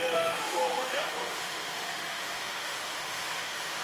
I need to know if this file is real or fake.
fake